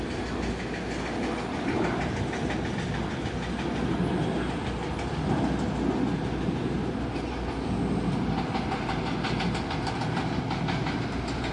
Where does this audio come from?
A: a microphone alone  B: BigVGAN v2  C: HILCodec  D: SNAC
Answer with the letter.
A